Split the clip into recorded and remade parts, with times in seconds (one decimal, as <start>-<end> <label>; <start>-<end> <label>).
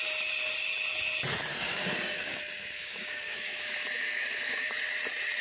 0.0-1.5 recorded; 1.5-4.7 remade; 4.7-5.4 recorded